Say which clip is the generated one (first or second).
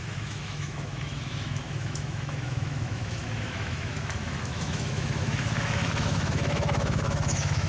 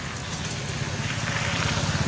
first